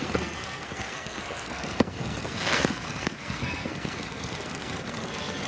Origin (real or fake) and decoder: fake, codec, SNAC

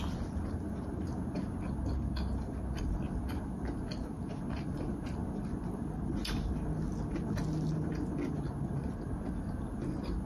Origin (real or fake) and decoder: real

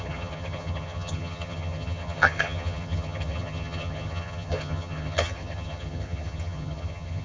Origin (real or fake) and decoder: fake, vocoder, HiFi-GAN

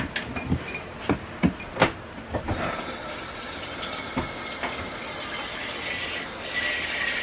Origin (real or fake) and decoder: real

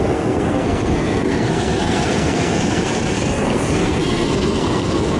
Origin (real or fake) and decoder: fake, codec, SNAC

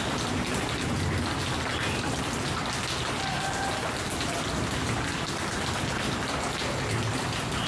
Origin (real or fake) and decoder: real